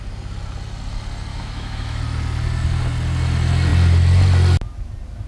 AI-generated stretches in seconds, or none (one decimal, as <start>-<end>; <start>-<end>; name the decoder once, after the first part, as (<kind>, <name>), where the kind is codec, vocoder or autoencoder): 1.3-2.0 (autoencoder, DAC-VAE)